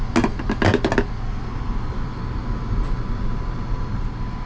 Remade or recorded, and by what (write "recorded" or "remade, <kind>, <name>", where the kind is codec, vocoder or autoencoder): recorded